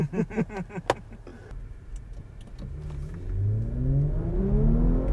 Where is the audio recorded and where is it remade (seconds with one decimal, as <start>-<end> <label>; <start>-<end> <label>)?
0.0-5.1 recorded